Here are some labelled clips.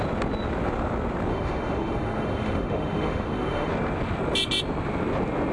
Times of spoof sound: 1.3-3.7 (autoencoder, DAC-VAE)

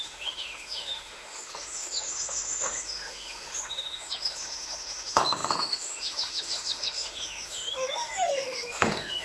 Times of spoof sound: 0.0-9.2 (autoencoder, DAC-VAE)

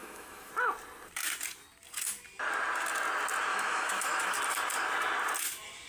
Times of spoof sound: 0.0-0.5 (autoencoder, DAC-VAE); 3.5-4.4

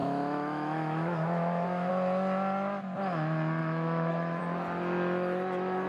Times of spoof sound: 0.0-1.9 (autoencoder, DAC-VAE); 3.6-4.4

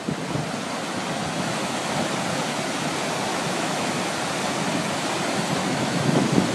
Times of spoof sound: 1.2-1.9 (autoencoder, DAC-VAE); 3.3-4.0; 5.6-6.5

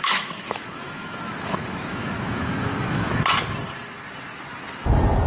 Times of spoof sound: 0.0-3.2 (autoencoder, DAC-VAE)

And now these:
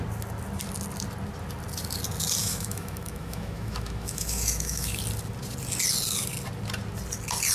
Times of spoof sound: 2.4-5.0 (autoencoder, DAC-VAE)

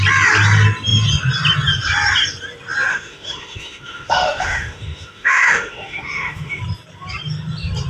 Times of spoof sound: 2.9-6.6 (autoencoder, DAC-VAE)